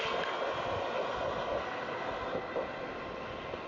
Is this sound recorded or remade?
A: recorded